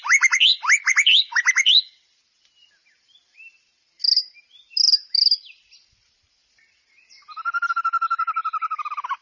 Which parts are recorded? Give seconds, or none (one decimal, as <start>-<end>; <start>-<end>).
4.0-4.7